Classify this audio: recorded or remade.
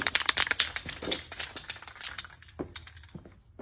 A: recorded